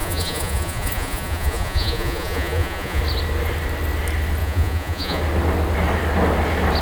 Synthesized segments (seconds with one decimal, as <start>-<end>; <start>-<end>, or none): 0.0-3.0; 4.4-5.2